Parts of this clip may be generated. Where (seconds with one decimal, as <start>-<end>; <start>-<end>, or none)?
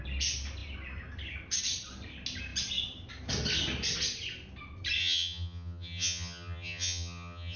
5.0-7.6